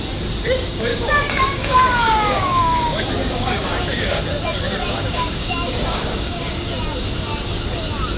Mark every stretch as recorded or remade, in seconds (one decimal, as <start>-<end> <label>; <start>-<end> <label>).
0.0-0.9 recorded; 0.9-4.2 remade; 4.2-4.8 recorded; 4.8-6.5 remade; 6.5-8.2 recorded